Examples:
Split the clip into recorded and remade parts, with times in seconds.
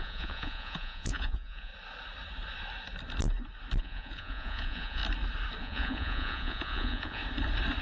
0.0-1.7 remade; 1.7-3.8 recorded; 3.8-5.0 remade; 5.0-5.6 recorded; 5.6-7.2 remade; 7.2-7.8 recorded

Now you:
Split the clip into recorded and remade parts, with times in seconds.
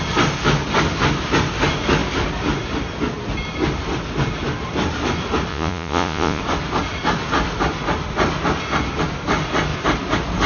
0.0-5.5 recorded; 5.5-6.4 remade; 6.4-10.5 recorded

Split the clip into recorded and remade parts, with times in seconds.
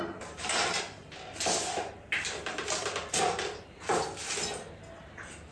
0.0-5.5 recorded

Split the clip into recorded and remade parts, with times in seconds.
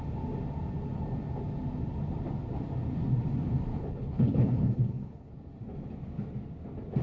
0.0-3.7 recorded; 3.7-5.3 remade; 5.3-7.0 recorded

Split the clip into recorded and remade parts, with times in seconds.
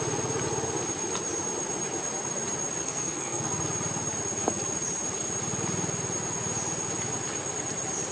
0.0-2.8 recorded; 2.8-3.5 remade; 3.5-8.1 recorded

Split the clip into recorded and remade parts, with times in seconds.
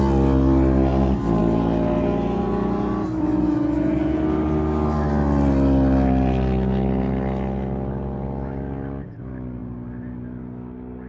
0.0-11.1 recorded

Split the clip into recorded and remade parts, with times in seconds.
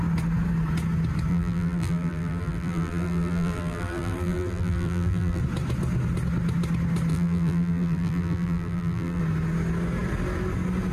0.0-1.3 recorded; 1.3-5.4 remade; 5.4-7.1 recorded; 7.1-9.2 remade; 9.2-10.9 recorded